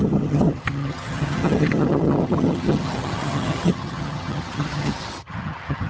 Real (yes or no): no